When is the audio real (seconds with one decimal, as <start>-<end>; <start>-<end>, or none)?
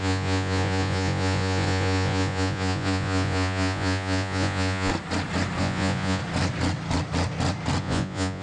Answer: 4.9-5.6; 6.2-7.8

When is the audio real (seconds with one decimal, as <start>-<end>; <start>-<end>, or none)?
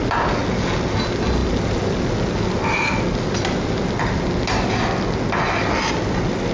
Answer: 0.0-6.5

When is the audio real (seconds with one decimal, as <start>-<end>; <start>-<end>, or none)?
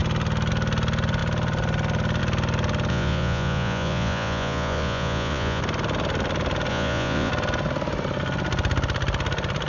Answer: 0.0-2.9; 5.6-6.7; 7.3-9.7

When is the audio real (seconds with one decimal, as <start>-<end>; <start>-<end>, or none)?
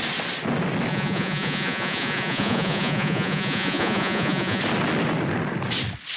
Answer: 0.0-0.9; 4.6-6.2